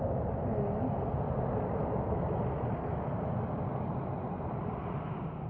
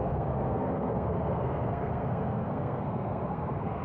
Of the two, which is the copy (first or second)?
second